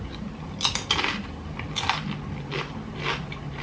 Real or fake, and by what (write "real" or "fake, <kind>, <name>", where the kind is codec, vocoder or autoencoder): real